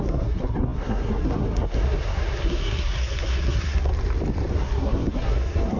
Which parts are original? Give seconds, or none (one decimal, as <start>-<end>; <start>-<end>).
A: 3.9-4.5